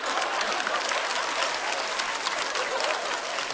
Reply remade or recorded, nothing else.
recorded